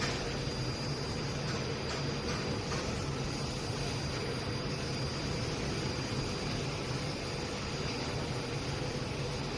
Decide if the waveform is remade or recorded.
recorded